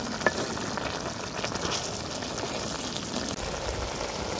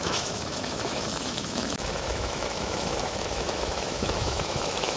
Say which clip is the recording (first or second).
first